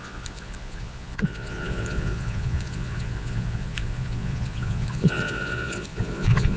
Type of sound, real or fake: fake